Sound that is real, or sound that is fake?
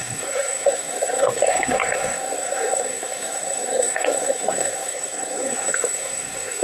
fake